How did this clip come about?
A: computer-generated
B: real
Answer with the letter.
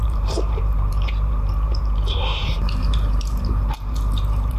A